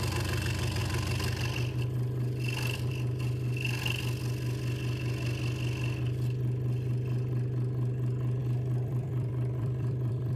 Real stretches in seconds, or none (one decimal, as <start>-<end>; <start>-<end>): 0.0-8.4